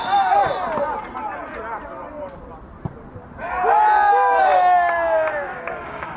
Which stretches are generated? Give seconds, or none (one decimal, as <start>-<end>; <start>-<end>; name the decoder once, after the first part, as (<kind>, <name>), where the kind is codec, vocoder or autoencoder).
0.0-0.4 (codec, DAC); 4.1-6.2